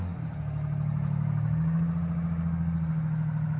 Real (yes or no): yes